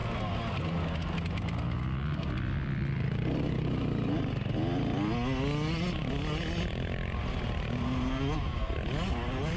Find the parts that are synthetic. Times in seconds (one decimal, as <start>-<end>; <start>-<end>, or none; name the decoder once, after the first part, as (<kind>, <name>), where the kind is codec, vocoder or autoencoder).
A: none